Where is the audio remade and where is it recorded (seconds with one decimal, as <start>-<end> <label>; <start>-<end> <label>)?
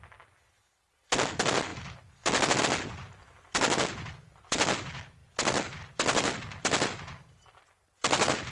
0.0-8.5 recorded